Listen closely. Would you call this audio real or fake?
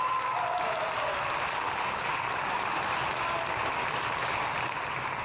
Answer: real